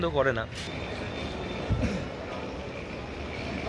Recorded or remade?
recorded